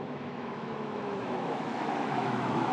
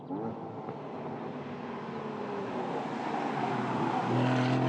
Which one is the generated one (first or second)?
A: first